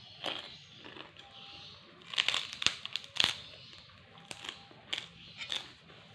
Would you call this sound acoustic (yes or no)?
yes